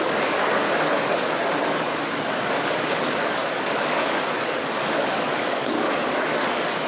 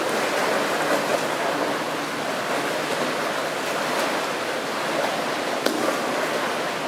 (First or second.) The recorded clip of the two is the second